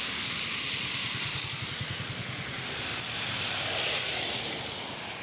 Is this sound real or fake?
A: real